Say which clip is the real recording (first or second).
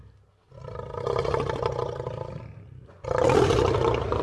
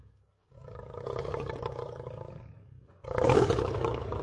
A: first